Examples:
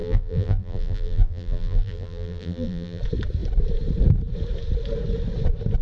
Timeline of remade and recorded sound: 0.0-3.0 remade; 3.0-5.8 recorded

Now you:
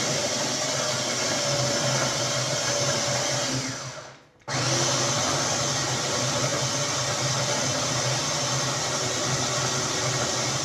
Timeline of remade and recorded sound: 0.0-10.6 recorded